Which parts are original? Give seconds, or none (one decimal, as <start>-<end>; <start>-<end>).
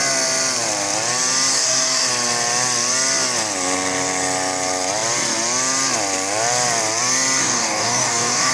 0.0-1.5; 2.1-7.4